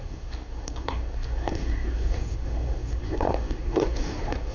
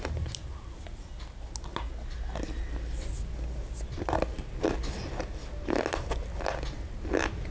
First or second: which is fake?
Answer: first